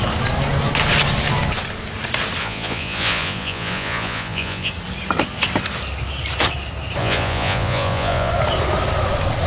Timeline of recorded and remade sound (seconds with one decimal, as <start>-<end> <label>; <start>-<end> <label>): 0.0-2.4 recorded; 2.4-4.7 remade; 4.7-7.0 recorded; 7.0-8.3 remade; 8.3-9.5 recorded